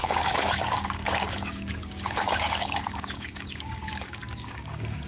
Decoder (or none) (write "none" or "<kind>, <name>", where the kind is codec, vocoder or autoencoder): codec, DAC